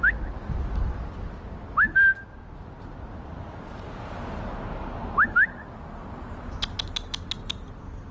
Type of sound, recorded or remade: recorded